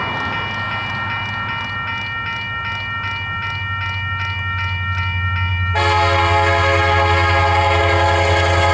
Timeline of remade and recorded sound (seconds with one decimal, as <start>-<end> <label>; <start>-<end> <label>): 0.0-8.7 recorded